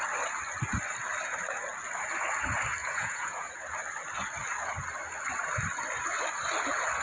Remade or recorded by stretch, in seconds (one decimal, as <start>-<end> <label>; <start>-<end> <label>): 0.0-2.8 recorded; 2.8-3.5 remade; 3.5-7.0 recorded